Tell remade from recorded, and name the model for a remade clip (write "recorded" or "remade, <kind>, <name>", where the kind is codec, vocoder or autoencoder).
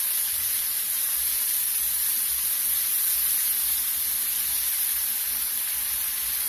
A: remade, vocoder, BigVGAN v2